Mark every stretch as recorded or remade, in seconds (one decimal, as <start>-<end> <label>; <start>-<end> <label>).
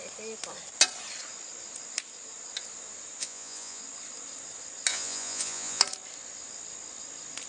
0.0-3.2 recorded; 3.2-3.8 remade; 3.8-4.9 recorded; 4.9-5.8 remade; 5.8-7.5 recorded